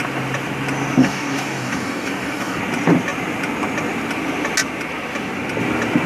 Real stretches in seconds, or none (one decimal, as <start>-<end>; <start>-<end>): 0.0-1.0; 2.6-6.1